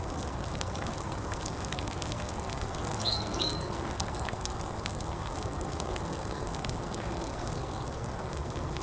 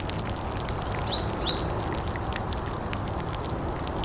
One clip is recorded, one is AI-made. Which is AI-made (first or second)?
first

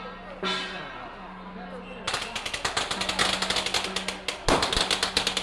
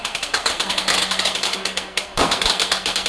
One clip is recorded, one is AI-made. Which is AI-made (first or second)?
second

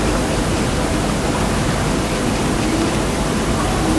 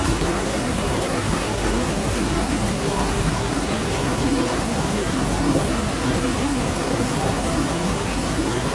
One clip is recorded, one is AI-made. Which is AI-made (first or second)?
second